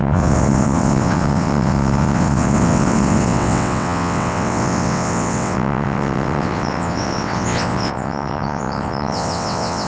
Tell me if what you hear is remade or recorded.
remade